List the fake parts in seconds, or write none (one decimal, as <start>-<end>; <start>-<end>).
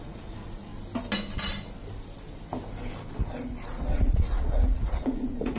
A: 0.0-0.7; 3.8-5.6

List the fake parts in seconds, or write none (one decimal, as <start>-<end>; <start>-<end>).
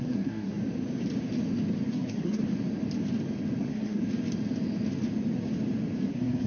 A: 0.0-0.6; 1.9-2.4; 3.6-4.0; 6.1-6.5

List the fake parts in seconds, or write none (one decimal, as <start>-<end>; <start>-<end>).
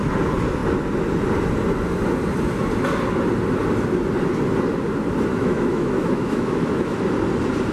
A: 5.3-7.0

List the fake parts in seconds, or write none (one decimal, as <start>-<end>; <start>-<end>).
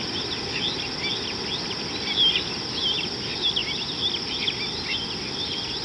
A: none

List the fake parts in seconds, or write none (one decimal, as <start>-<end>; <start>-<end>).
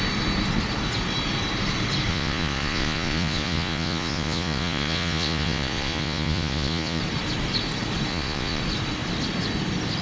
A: 2.1-7.0; 8.1-8.6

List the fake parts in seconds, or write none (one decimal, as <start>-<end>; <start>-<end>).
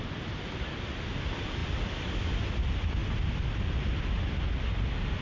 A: none